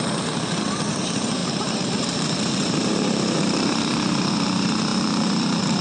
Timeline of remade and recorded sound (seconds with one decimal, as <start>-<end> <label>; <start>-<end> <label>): 0.0-1.4 recorded; 1.4-4.3 remade; 4.3-4.9 recorded; 4.9-5.8 remade